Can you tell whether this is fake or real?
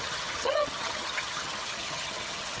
fake